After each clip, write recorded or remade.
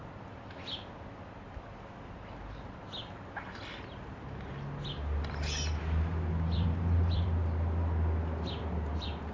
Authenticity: remade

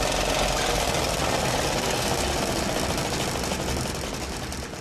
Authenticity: recorded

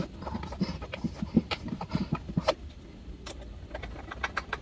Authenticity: recorded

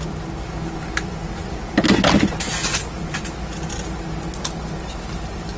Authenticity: recorded